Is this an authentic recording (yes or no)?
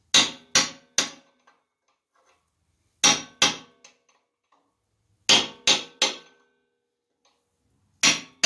yes